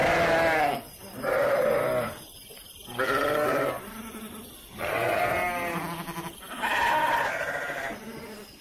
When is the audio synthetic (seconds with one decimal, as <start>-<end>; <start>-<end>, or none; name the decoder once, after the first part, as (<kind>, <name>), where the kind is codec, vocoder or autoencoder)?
none